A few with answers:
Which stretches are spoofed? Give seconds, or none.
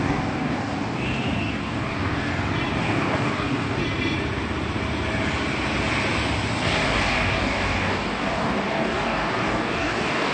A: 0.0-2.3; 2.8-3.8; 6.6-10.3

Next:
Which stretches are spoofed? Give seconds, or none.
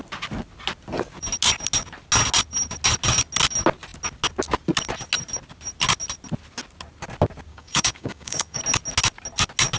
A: 7.5-8.6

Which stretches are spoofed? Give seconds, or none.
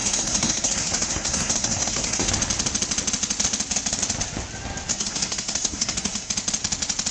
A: 0.0-2.3; 4.9-6.3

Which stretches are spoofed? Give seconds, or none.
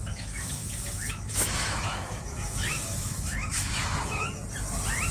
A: 0.0-4.4